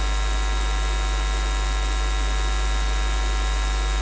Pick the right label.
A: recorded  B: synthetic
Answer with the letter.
A